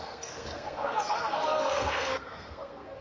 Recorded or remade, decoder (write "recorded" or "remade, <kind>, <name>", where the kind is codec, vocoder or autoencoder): remade, codec, SNAC